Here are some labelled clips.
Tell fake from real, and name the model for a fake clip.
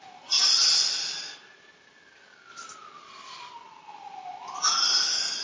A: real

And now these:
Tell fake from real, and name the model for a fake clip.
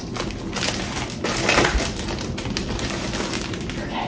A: real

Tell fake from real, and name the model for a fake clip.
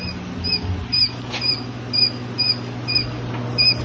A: real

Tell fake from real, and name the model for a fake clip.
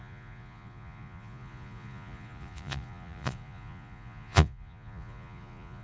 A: fake, vocoder, Vocos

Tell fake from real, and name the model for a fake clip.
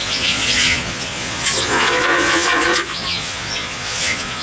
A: fake, vocoder, Vocos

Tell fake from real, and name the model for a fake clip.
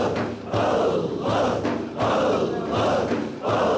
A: real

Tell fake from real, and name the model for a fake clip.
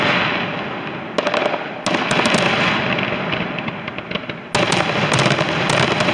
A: real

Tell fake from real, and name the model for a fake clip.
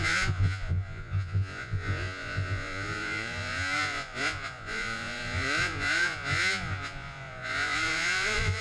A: fake, vocoder, Vocos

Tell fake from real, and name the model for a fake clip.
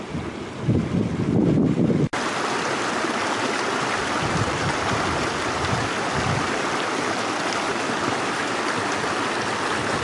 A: real